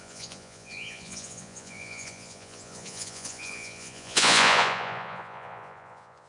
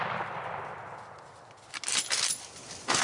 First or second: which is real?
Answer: second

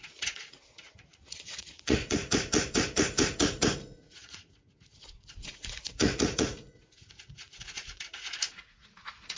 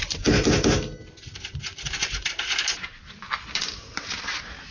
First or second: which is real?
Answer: second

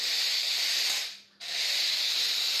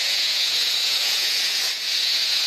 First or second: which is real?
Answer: first